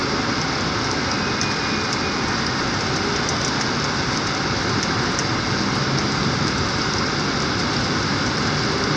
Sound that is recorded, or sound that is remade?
recorded